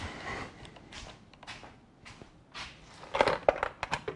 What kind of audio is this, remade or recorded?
recorded